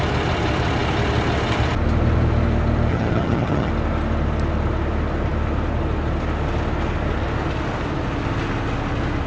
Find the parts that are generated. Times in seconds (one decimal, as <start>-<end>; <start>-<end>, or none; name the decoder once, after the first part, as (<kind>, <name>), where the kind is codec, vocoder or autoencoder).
2.9-3.7 (vocoder, HiFi-GAN)

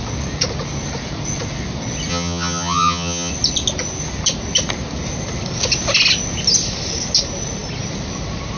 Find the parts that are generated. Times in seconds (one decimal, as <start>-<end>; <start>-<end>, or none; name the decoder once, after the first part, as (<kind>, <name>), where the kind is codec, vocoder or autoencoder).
2.1-3.3 (vocoder, HiFi-GAN)

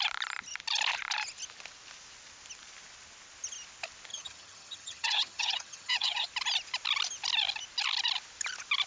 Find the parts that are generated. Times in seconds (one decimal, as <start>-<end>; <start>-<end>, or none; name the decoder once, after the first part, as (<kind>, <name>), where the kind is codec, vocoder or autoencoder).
4.1-6.3 (vocoder, HiFi-GAN)

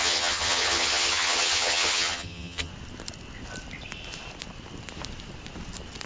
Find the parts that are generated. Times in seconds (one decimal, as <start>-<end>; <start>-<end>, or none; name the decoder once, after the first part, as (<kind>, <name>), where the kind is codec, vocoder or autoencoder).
0.0-2.7 (vocoder, HiFi-GAN)

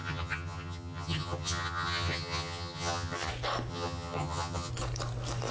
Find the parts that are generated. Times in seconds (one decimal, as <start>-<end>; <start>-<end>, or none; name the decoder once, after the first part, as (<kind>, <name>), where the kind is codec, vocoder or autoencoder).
0.0-3.3 (vocoder, HiFi-GAN); 3.7-4.7

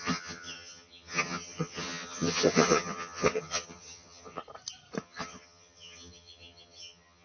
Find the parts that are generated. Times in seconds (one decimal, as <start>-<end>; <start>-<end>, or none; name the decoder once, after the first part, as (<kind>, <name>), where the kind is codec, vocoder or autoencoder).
0.0-4.4 (vocoder, HiFi-GAN); 5.0-7.2

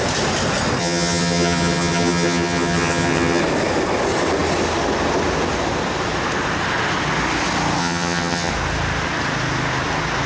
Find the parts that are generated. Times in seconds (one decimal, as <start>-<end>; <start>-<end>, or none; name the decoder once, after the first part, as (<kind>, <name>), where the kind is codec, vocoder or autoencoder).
0.8-3.4 (vocoder, HiFi-GAN); 7.8-8.5

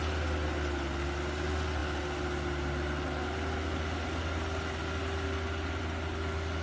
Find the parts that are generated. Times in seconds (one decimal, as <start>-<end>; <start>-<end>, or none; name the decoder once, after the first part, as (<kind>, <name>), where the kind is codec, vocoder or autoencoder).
none